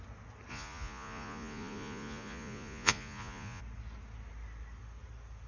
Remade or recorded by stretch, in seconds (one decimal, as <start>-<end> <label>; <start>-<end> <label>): 0.0-0.5 recorded; 0.5-3.6 remade; 3.6-5.5 recorded